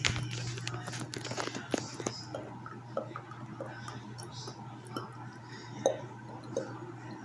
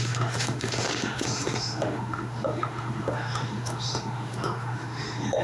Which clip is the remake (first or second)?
second